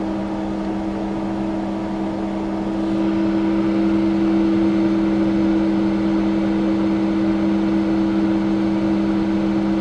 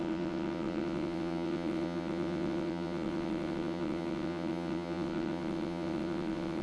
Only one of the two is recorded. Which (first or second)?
first